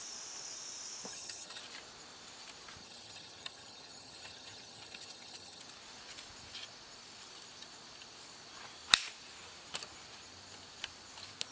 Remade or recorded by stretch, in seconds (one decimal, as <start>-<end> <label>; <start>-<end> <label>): 0.0-1.1 recorded; 1.1-1.6 remade; 1.6-2.8 recorded; 2.8-5.6 remade; 5.6-11.5 recorded